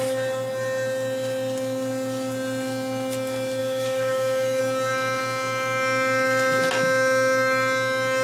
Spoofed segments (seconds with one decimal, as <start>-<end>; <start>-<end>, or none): 3.6-4.6